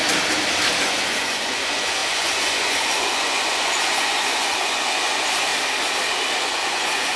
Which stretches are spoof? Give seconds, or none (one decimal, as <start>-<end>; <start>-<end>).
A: 0.8-5.5; 6.4-7.2

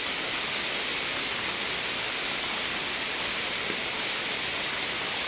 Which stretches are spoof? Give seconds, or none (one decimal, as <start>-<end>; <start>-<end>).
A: none

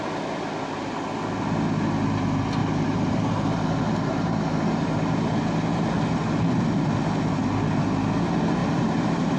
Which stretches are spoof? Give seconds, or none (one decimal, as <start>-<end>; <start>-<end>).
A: 2.6-4.9; 8.6-9.4

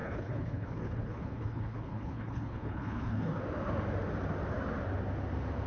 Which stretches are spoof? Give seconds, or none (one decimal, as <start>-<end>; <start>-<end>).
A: 0.0-3.4

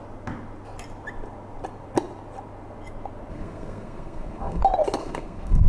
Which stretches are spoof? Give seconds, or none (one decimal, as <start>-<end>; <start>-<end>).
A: 3.3-4.6; 5.0-5.7

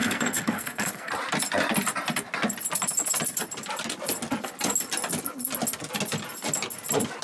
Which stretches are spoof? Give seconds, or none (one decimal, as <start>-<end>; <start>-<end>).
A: 0.0-1.1

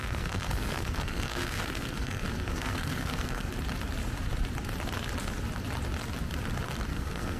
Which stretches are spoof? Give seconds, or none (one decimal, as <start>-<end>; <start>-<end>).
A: 0.0-3.5; 6.9-7.4